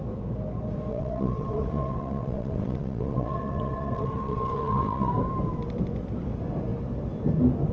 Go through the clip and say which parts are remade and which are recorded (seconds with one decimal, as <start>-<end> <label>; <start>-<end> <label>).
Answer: 0.0-0.9 recorded; 0.9-5.1 remade; 5.1-7.7 recorded